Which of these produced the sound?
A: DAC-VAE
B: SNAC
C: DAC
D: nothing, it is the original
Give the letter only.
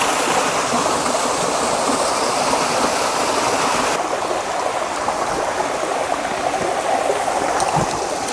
D